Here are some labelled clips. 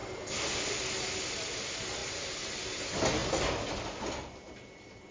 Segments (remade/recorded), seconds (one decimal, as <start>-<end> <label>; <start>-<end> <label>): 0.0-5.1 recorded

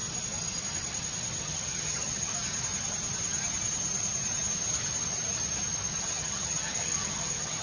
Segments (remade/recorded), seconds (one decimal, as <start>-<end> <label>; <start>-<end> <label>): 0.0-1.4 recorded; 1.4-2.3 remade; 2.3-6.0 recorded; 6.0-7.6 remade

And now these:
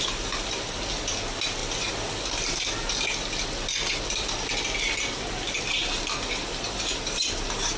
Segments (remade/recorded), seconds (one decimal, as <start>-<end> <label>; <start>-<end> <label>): 0.0-7.8 recorded